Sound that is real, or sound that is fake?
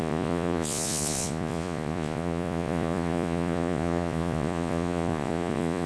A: fake